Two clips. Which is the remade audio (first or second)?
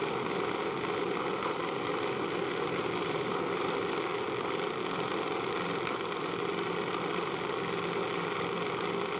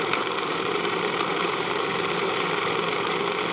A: second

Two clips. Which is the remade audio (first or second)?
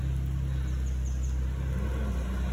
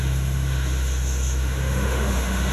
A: second